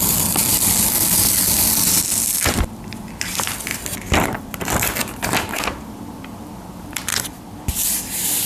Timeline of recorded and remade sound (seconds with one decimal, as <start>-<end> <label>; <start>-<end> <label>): 0.0-3.7 remade; 3.7-4.4 recorded; 4.4-7.1 remade; 7.1-7.7 recorded; 7.7-8.5 remade